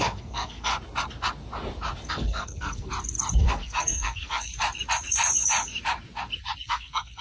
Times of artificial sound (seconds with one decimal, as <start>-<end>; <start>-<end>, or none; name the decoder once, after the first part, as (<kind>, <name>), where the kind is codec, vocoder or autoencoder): 0.0-0.7 (codec, SNAC); 2.1-2.9; 3.4-4.5; 6.7-7.2